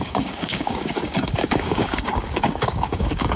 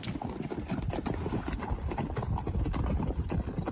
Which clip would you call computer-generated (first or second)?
first